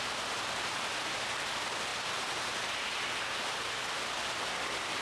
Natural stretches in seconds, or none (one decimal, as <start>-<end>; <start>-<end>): 0.0-5.0